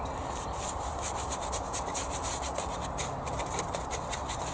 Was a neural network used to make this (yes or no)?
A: no